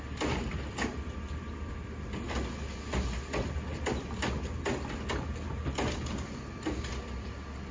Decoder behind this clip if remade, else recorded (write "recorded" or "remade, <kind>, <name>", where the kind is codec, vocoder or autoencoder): recorded